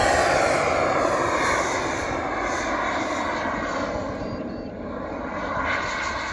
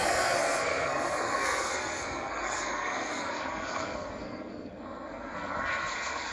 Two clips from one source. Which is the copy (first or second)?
second